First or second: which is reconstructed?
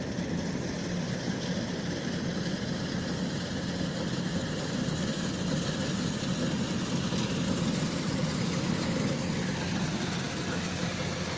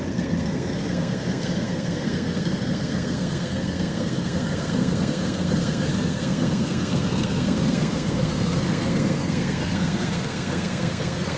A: second